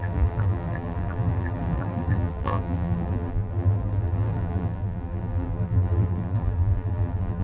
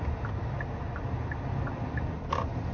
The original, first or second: second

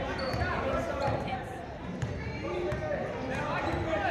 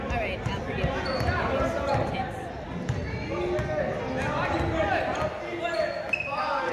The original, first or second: second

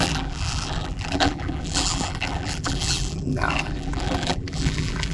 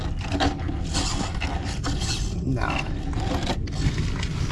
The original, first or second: second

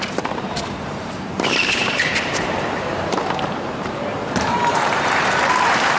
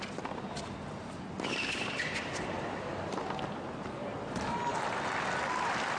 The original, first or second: second